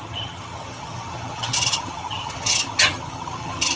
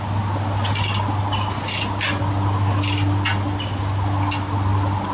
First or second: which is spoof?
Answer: first